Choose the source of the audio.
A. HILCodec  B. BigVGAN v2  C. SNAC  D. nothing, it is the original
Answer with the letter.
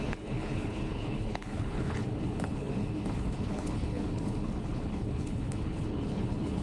A